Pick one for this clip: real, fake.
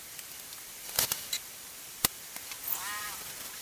fake